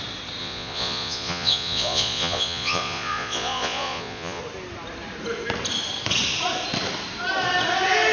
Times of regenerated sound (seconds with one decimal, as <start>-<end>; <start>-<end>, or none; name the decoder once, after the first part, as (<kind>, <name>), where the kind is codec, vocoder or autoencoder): 0.4-4.4 (vocoder, Vocos)